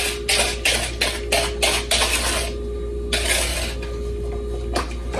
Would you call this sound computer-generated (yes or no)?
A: no